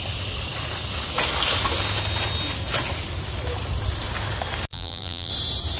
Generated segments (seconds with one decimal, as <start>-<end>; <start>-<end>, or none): 4.7-5.3